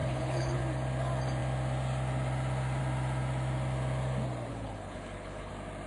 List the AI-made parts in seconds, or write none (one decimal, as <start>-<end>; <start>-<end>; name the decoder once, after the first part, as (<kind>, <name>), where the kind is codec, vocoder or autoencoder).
0.0-0.6 (codec, HILCodec); 4.5-5.5